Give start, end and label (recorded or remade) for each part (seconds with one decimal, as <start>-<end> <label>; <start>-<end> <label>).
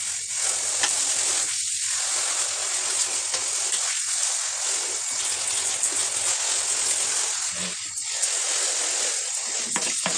0.0-10.2 recorded